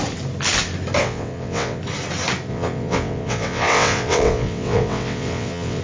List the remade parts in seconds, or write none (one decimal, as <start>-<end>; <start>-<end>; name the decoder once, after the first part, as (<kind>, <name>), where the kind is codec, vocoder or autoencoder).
1.0-1.8 (vocoder, WaveNeXt); 2.5-5.8